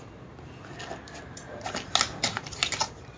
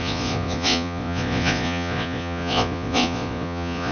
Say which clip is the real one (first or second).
first